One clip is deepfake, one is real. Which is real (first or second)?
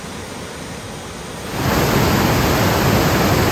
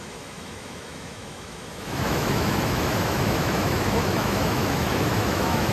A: first